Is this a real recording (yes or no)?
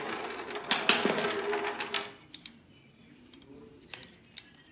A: yes